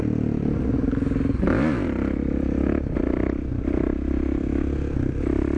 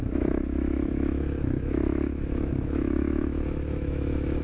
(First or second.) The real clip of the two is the first